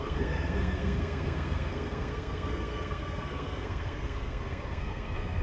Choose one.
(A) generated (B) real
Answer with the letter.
A